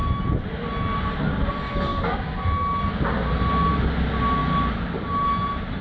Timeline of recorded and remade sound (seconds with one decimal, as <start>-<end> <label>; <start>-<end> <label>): 0.0-5.8 recorded

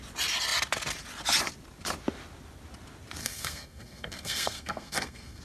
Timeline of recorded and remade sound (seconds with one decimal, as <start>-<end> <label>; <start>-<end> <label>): 0.0-3.2 recorded; 3.2-5.4 remade

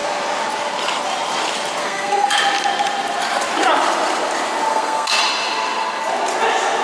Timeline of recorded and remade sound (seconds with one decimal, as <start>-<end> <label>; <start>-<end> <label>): 0.0-1.8 recorded; 1.8-2.4 remade; 2.4-4.7 recorded; 4.7-5.2 remade; 5.2-6.8 recorded

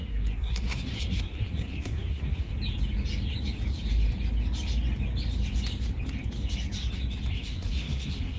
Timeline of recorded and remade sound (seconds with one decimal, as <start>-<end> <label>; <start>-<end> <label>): 0.0-2.5 remade; 2.5-7.3 recorded; 7.3-8.4 remade